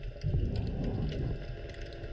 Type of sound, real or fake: real